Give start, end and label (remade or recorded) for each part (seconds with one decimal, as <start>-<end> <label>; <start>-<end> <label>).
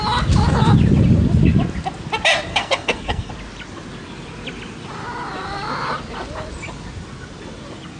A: 0.0-2.5 recorded; 2.5-3.3 remade; 3.3-8.0 recorded